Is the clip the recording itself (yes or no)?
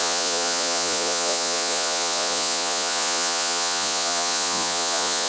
no